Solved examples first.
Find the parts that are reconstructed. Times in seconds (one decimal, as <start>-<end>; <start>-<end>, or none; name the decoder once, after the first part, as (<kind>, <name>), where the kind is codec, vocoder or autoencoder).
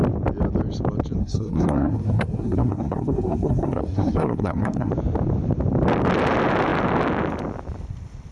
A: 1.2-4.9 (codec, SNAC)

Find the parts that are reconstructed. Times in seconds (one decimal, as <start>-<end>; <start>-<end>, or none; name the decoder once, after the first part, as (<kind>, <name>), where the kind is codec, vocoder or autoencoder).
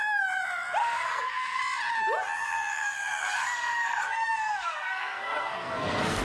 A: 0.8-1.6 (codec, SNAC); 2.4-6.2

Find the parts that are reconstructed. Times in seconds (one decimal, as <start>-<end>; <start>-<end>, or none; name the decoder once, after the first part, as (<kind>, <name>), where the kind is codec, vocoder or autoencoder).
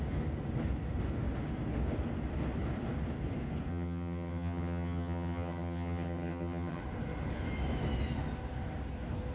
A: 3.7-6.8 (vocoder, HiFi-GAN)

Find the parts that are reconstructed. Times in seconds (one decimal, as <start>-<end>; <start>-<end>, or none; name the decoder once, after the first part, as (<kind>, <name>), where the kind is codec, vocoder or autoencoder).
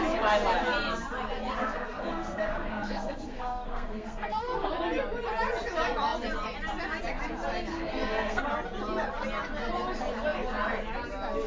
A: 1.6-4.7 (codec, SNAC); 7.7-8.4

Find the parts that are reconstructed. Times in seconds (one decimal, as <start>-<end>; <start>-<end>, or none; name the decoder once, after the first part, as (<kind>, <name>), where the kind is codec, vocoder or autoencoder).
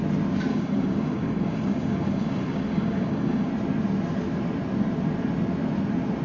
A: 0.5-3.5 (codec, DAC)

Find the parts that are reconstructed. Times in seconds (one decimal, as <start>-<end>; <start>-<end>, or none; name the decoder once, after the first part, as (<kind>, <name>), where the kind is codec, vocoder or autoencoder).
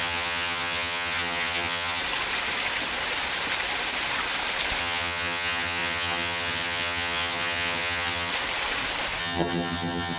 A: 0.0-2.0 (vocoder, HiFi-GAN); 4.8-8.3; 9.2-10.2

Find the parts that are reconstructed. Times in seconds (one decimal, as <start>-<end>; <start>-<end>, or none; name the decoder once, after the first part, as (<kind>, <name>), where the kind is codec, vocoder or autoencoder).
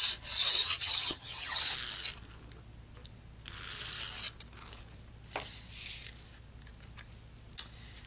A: 0.6-1.7 (vocoder, HiFi-GAN)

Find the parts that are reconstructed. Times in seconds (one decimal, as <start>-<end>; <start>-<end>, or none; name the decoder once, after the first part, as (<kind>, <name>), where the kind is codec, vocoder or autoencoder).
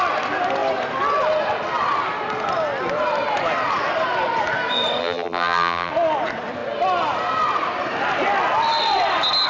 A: 5.0-5.9 (vocoder, BigVGAN v2)